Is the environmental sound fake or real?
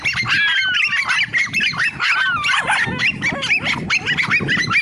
real